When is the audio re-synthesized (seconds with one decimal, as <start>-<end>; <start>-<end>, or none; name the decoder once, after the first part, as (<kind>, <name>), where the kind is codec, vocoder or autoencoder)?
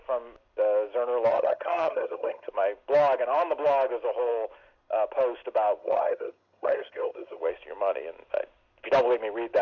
1.3-2.5 (vocoder, HiFi-GAN); 5.8-7.4